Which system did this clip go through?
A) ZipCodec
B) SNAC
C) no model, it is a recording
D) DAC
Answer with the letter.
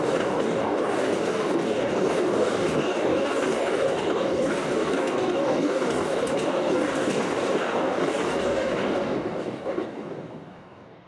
D